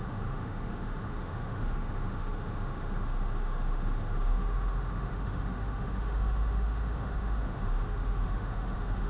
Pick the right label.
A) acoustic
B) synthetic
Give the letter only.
B